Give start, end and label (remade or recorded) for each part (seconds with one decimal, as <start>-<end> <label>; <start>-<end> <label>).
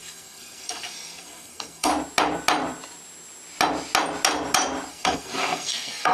0.0-1.9 remade; 1.9-4.9 recorded; 4.9-6.1 remade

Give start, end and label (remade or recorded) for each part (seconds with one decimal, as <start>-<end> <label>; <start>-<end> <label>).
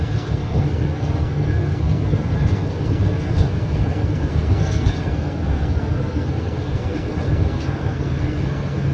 0.0-8.9 remade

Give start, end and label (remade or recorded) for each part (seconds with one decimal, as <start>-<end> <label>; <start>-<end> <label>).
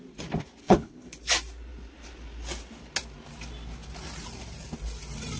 0.0-0.6 recorded; 0.6-1.1 remade; 1.1-5.4 recorded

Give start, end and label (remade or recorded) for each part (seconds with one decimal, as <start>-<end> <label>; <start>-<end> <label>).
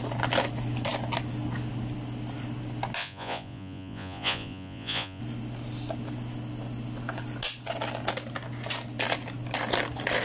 0.0-3.0 recorded; 3.0-5.2 remade; 5.2-10.2 recorded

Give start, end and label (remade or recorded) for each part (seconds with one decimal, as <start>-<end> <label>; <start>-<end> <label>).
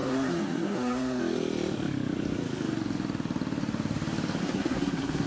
0.0-1.2 remade; 1.2-4.4 recorded; 4.4-5.3 remade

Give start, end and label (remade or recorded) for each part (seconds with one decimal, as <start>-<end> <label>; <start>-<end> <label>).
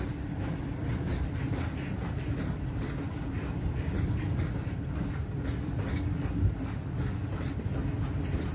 0.0-8.5 recorded